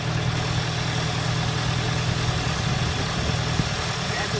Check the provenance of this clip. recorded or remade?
recorded